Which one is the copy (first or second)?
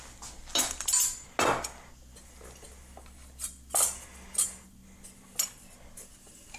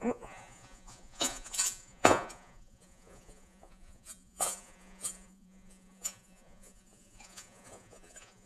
second